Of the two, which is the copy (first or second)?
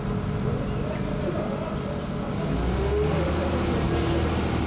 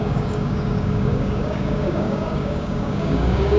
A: second